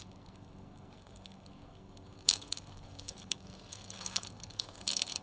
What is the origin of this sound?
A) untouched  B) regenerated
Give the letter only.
B